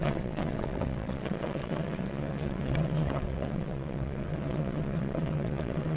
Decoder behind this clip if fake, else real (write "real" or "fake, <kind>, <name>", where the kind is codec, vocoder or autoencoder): fake, vocoder, WaveNeXt